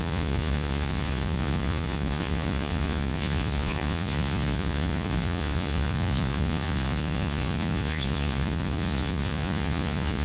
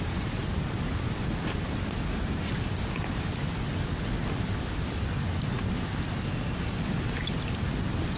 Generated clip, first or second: first